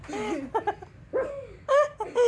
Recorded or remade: recorded